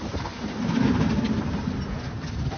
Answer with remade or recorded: recorded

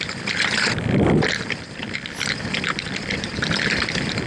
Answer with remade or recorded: recorded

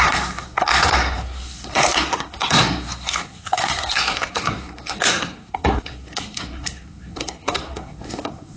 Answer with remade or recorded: remade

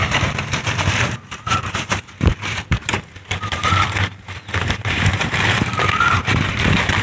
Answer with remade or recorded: remade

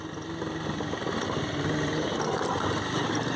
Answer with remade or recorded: recorded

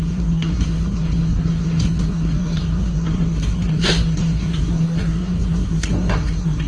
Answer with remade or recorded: remade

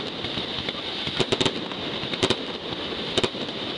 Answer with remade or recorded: recorded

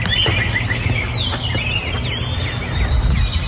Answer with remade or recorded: recorded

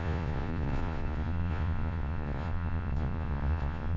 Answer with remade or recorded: remade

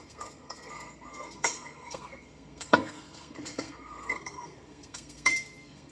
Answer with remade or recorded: remade